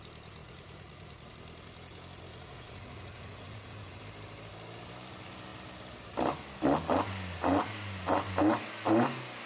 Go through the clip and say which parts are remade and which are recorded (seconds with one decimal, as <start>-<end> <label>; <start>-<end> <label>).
0.0-0.4 recorded; 0.4-1.3 remade; 1.3-2.3 recorded; 2.3-4.0 remade; 4.0-9.5 recorded